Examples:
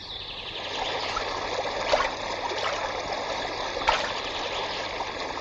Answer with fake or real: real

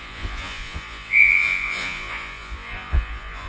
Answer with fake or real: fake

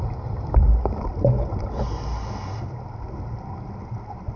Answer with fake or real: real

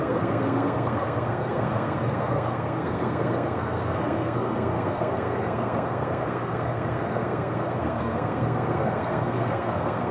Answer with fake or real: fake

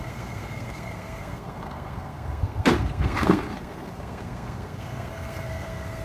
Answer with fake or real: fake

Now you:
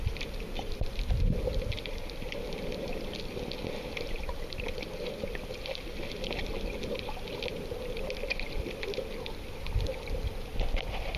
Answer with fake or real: real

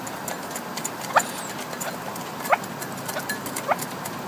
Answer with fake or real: real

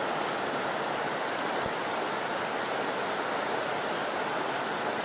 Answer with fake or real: real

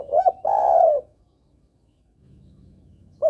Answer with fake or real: fake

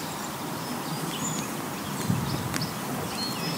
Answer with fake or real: real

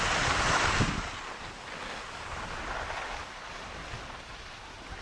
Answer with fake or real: real